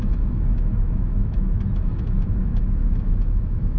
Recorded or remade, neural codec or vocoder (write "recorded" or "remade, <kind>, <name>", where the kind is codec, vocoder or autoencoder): remade, autoencoder, DAC-VAE